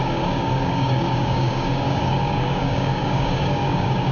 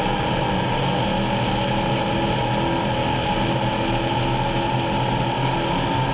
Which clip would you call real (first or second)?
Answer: second